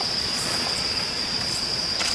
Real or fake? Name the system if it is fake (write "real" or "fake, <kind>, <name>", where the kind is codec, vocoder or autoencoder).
fake, vocoder, Vocos